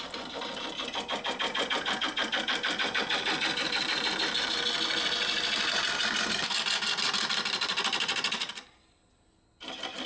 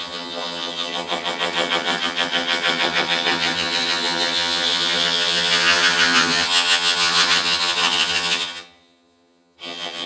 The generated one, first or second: second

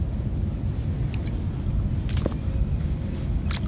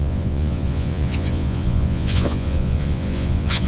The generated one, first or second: second